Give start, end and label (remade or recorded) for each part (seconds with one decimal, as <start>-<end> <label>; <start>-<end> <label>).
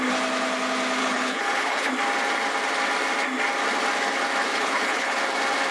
0.0-1.0 recorded; 1.0-1.9 remade; 1.9-4.5 recorded; 4.5-5.2 remade; 5.2-5.7 recorded